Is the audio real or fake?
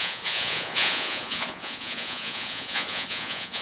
fake